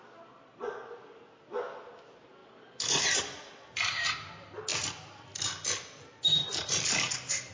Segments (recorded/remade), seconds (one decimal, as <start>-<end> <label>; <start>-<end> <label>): 0.0-7.5 recorded